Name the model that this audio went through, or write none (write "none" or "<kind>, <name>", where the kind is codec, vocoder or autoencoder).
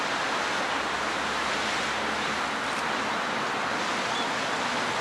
none